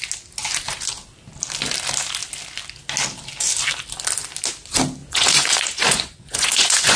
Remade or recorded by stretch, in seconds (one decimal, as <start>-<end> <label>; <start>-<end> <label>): 0.0-5.0 recorded; 5.0-7.0 remade